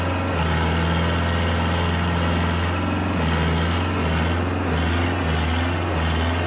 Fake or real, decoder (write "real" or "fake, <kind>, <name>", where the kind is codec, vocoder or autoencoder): real